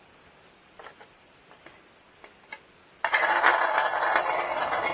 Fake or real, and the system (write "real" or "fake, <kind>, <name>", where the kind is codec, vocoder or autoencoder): real